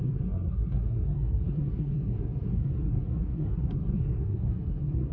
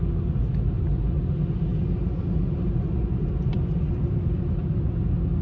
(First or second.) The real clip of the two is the second